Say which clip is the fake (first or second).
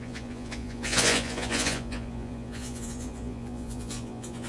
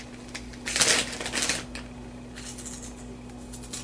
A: first